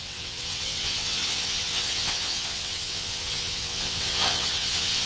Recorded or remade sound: remade